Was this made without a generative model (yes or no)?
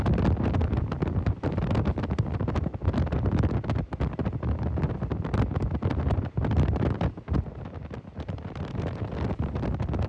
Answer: no